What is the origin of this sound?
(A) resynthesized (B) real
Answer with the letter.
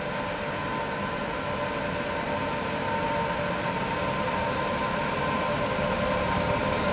B